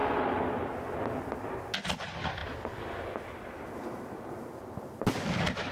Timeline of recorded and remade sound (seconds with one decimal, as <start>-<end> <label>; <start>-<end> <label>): 0.0-5.7 recorded